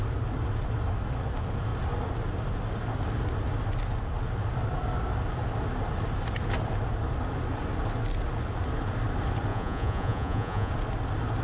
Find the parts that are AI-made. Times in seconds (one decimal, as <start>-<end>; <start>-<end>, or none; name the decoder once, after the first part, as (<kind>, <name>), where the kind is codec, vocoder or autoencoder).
9.5-10.7 (vocoder, Vocos)